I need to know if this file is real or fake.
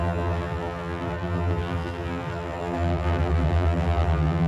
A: fake